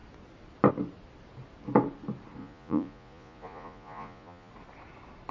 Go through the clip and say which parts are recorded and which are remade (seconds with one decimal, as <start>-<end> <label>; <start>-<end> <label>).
0.0-2.4 recorded; 2.4-4.5 remade; 4.5-5.3 recorded